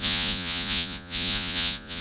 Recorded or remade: remade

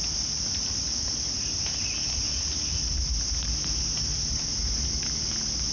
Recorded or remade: recorded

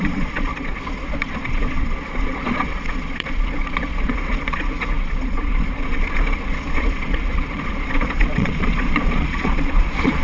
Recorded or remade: remade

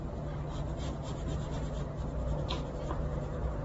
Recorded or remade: recorded